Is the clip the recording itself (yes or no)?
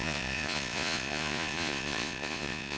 no